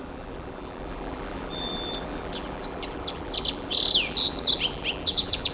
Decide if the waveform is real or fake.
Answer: fake